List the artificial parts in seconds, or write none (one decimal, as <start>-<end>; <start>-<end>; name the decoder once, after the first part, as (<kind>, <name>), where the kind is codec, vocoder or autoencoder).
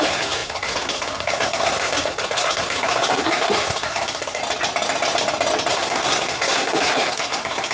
0.0-4.4 (codec, SNAC); 5.7-7.7